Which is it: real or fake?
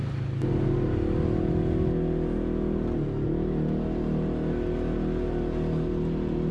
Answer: real